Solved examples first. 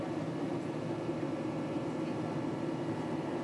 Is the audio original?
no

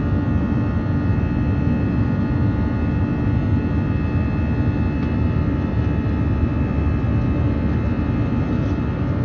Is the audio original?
yes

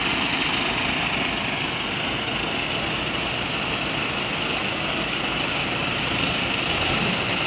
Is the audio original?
yes